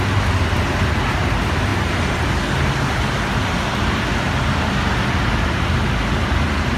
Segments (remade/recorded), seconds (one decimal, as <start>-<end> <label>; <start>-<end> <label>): 0.0-6.8 recorded